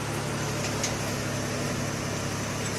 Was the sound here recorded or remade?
recorded